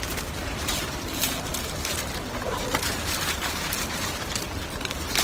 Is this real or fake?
real